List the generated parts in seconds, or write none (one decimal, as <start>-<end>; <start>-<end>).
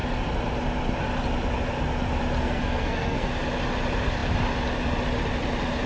2.4-3.3